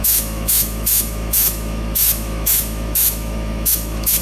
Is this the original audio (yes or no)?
no